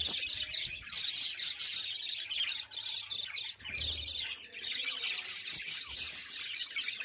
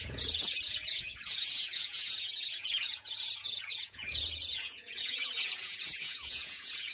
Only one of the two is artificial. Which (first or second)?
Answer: second